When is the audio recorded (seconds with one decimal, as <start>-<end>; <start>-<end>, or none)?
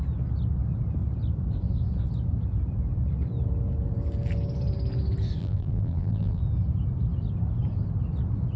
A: 0.0-5.4; 6.4-8.6